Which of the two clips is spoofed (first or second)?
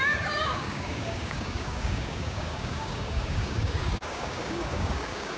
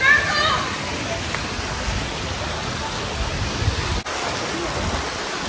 first